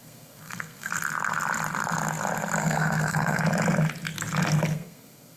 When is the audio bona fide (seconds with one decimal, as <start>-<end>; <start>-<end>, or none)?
0.9-2.6; 3.4-4.7